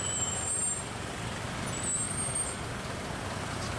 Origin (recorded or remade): recorded